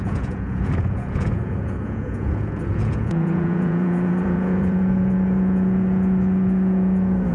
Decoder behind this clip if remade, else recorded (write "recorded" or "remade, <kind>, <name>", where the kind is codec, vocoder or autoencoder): remade, vocoder, Vocos